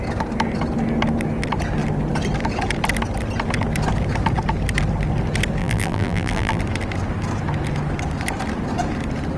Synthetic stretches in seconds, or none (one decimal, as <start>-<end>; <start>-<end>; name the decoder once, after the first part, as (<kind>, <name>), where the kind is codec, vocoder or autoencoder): 5.6-6.6 (vocoder, BigVGAN v2)